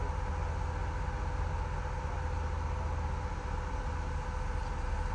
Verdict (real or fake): real